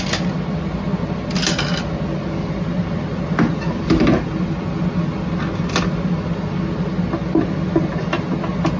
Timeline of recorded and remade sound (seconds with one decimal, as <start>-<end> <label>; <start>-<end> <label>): 0.0-8.8 recorded